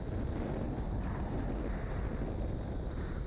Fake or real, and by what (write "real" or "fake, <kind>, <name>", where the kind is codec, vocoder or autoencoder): real